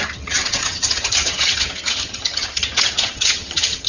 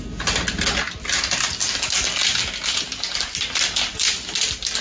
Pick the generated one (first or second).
first